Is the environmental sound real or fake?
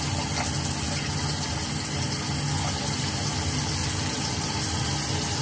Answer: real